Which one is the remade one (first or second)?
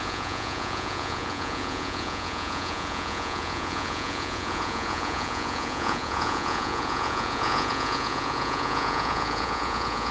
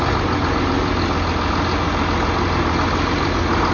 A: first